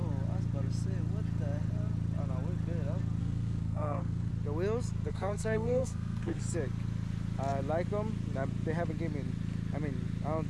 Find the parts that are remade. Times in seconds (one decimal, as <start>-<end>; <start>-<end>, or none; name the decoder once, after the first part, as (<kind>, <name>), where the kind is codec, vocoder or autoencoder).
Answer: 3.2-4.3 (codec, SNAC); 5.1-6.4

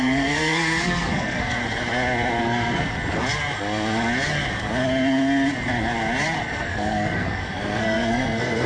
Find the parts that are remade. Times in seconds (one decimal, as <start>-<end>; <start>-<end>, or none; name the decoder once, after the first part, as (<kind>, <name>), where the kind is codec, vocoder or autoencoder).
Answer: 0.0-1.6 (codec, SNAC); 2.4-2.9; 6.4-8.7